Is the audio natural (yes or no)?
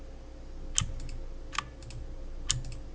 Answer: yes